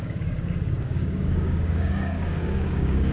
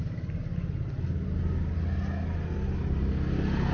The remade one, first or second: first